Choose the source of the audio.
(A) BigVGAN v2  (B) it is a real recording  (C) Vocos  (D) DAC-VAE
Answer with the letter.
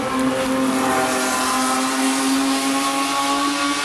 B